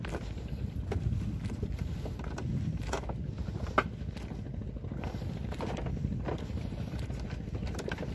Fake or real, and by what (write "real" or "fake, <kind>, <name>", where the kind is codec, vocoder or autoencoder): real